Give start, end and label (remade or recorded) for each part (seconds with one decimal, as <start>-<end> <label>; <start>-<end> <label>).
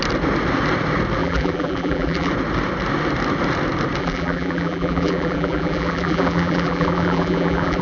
0.0-1.2 recorded; 1.2-2.3 remade; 2.3-4.0 recorded; 4.0-7.8 remade